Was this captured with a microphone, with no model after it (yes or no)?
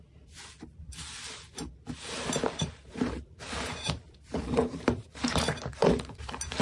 no